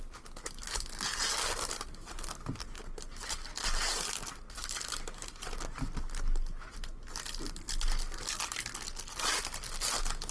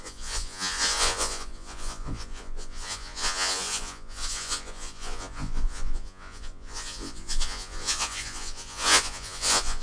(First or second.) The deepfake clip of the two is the second